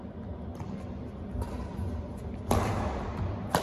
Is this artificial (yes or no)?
no